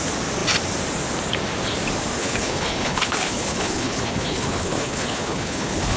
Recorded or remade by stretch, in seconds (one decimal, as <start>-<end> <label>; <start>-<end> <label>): 0.0-2.2 recorded; 2.2-6.0 remade